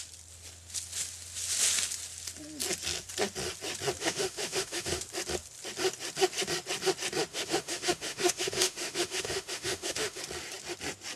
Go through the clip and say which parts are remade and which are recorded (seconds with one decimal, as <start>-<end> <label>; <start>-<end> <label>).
0.0-4.0 recorded; 4.0-5.0 remade; 5.0-7.3 recorded; 7.3-10.2 remade; 10.2-11.2 recorded